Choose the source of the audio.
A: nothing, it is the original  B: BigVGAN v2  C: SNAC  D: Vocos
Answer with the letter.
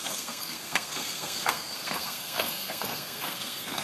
C